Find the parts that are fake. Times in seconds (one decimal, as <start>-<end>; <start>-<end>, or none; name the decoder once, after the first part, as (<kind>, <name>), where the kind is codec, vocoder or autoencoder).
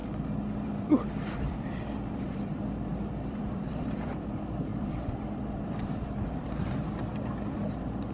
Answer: 0.0-8.1 (vocoder, BigVGAN v2)